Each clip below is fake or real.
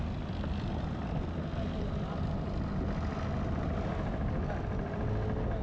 real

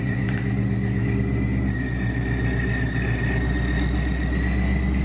real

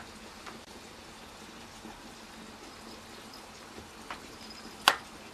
real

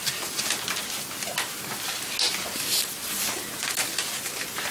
real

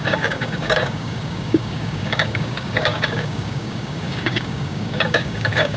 fake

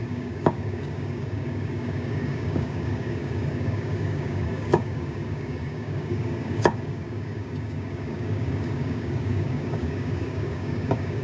fake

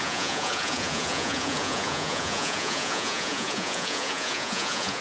fake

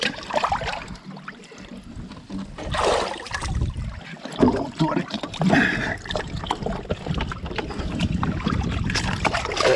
real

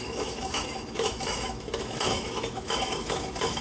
fake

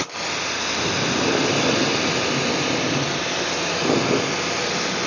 real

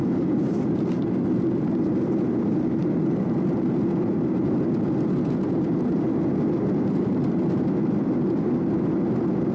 real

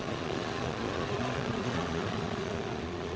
fake